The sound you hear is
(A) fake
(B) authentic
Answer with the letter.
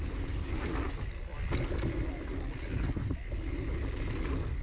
B